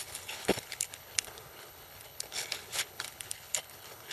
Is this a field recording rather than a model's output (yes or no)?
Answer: no